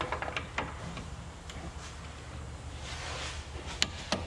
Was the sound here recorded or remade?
recorded